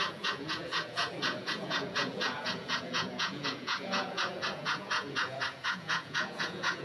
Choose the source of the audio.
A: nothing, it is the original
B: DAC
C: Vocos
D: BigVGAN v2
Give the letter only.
C